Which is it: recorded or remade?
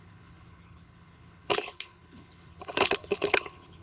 remade